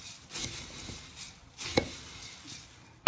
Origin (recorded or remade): recorded